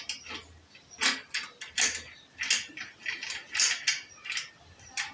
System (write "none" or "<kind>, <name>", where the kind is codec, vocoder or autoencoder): none